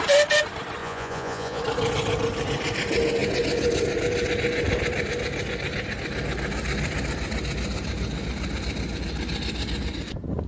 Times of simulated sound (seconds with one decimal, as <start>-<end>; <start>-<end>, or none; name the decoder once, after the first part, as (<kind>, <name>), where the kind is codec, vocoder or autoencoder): 0.8-1.6 (vocoder, Vocos)